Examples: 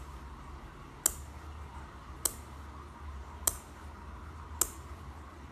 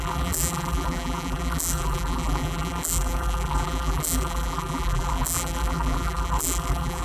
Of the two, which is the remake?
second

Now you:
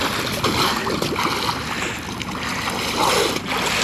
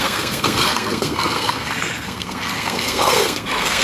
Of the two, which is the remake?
second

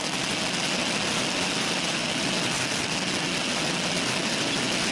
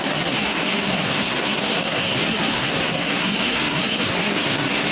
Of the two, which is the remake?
second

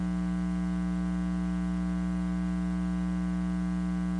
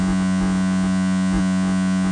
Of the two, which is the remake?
second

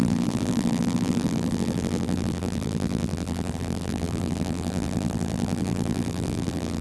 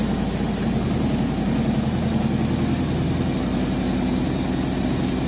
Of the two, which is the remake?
first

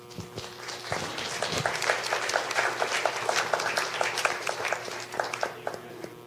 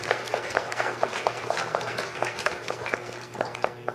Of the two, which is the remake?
second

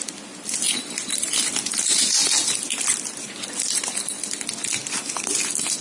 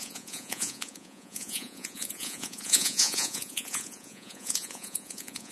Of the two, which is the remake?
second